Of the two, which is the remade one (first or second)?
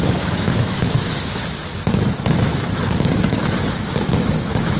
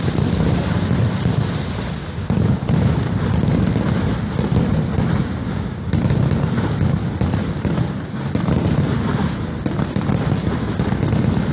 first